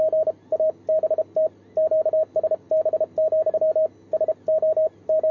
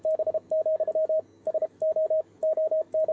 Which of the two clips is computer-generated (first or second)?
second